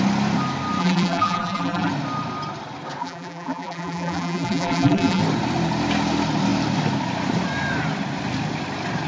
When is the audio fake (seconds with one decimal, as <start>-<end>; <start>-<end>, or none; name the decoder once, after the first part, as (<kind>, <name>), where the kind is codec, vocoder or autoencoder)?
0.8-1.9 (vocoder, BigVGAN v2); 3.0-5.2